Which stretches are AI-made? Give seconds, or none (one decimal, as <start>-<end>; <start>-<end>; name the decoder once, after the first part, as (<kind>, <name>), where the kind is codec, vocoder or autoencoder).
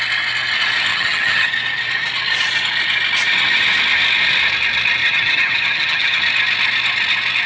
0.9-1.5 (vocoder, HiFi-GAN); 5.0-6.2